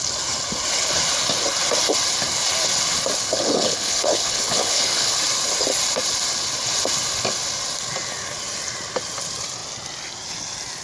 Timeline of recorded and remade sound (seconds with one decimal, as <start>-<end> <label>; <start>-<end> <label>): 0.0-3.3 recorded; 3.3-5.2 remade; 5.2-10.8 recorded